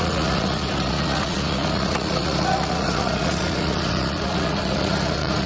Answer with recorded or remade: remade